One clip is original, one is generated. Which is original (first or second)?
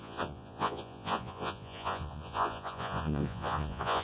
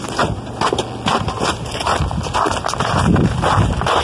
second